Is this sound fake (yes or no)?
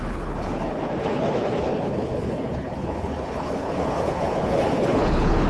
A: yes